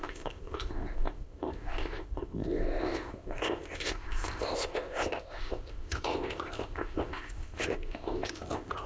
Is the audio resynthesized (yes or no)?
yes